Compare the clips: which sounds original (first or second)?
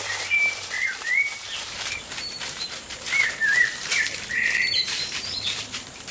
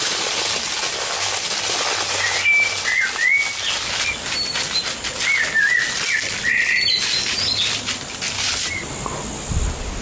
second